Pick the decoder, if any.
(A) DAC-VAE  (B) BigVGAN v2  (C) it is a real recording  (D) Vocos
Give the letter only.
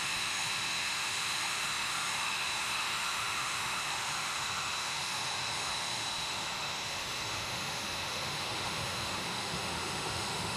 A